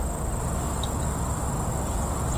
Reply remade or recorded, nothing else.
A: recorded